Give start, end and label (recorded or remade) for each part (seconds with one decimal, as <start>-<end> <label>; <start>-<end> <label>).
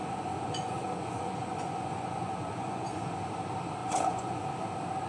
0.0-3.1 remade; 3.1-3.8 recorded; 3.8-4.4 remade; 4.4-5.1 recorded